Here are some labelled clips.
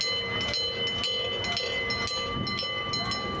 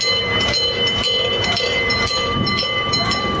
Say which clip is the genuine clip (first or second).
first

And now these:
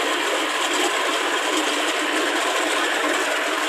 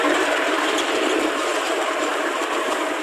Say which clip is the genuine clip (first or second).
first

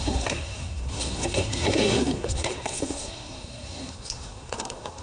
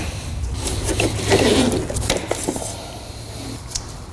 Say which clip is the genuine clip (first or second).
second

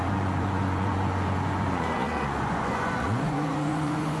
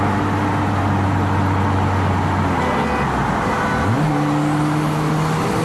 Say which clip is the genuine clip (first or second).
second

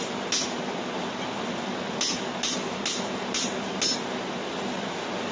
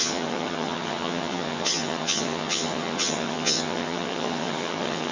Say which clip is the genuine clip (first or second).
first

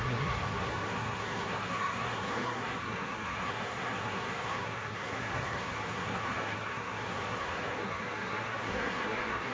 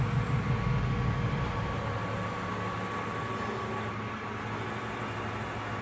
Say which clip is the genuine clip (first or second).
second